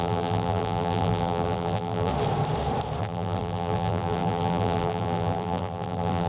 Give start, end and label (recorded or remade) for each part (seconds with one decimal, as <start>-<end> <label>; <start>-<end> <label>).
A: 0.0-2.1 remade; 2.1-3.0 recorded; 3.0-6.3 remade